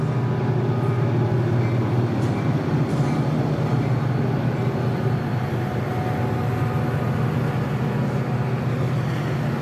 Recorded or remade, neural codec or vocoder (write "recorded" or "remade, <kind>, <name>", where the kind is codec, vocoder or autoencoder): recorded